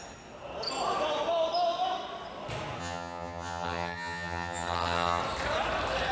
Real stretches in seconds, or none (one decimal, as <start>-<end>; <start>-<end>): 0.0-2.8; 5.2-6.1